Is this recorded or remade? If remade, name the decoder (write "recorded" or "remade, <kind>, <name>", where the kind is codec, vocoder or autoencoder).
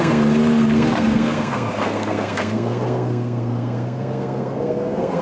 remade, codec, SNAC